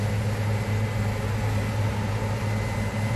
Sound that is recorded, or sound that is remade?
recorded